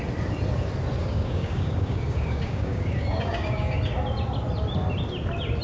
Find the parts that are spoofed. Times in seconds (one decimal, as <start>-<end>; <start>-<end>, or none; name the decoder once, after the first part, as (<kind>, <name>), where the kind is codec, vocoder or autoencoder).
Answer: 1.0-3.8 (codec, DAC)